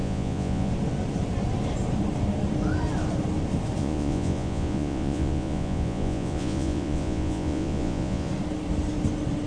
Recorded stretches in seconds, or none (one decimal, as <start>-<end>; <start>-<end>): 0.7-3.8; 8.3-9.5